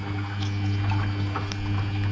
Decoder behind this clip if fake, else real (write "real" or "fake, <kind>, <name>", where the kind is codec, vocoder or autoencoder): real